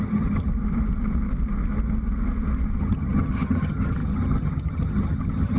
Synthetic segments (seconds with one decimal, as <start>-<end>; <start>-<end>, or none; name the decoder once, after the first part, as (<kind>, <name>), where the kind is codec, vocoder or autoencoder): 0.0-0.5 (vocoder, HiFi-GAN); 2.8-5.6